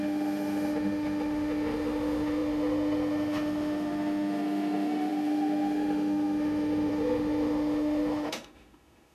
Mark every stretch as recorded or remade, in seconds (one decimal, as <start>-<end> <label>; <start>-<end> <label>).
0.0-9.1 remade